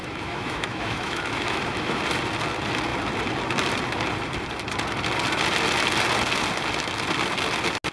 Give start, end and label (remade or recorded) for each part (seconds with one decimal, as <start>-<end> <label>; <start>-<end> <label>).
0.0-2.0 remade; 2.0-7.9 recorded